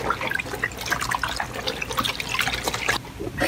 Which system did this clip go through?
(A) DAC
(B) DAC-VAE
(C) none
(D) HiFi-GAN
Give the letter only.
C